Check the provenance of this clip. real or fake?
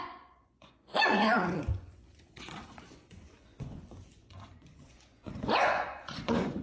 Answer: fake